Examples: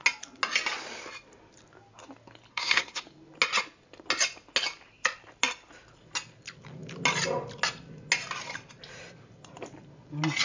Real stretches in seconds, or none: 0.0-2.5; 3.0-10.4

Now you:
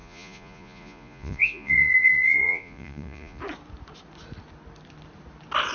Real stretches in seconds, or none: 3.4-5.7

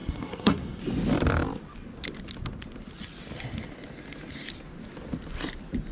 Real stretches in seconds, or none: 0.8-5.9

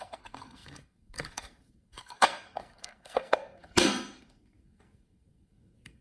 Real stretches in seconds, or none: none

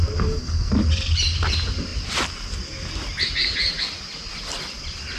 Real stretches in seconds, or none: 0.7-5.2

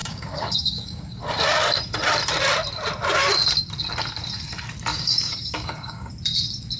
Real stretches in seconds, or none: 1.2-4.9; 6.1-6.8